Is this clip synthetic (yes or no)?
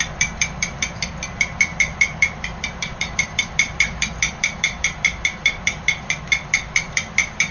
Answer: yes